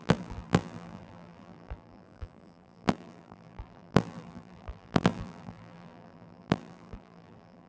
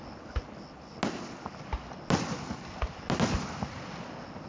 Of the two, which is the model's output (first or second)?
first